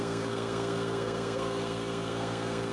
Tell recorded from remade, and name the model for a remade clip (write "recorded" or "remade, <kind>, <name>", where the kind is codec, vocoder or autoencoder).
remade, codec, SNAC